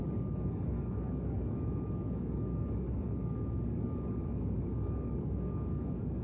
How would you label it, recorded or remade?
remade